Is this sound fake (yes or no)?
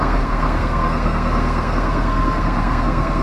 yes